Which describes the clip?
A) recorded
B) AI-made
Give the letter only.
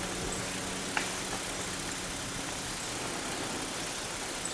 A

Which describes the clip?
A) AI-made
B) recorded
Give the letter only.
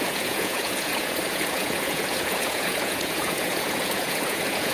A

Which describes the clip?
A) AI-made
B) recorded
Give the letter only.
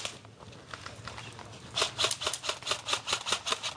B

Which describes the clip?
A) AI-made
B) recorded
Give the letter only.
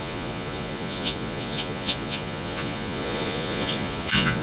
A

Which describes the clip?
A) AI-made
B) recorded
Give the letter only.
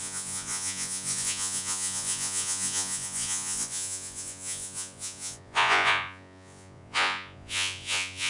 A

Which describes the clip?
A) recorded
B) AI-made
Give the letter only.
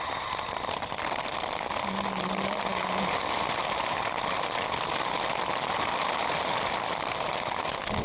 A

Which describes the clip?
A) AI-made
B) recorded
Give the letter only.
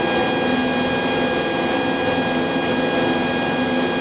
B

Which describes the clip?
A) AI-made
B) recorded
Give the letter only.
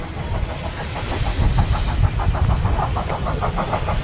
B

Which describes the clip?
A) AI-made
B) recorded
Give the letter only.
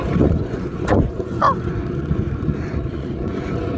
A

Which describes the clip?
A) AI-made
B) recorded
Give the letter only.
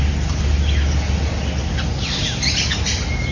B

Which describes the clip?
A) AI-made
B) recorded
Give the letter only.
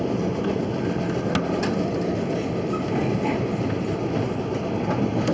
B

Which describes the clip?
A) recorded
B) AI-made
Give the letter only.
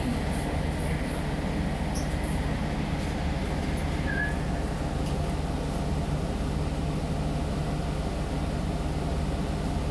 A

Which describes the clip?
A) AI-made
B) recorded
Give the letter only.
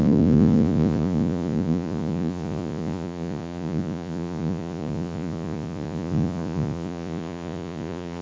A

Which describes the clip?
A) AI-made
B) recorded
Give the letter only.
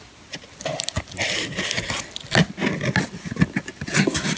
B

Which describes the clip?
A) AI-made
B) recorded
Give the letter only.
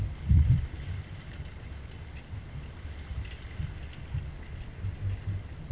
B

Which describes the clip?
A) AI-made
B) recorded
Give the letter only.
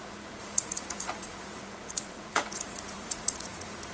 A